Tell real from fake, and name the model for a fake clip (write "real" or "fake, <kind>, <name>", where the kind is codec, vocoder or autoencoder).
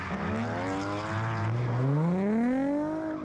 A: real